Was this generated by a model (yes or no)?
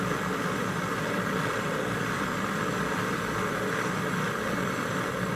yes